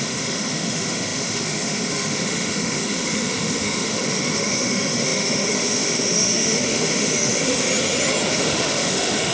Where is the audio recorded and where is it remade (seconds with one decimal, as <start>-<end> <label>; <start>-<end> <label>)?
0.0-7.7 remade; 7.7-8.3 recorded; 8.3-9.3 remade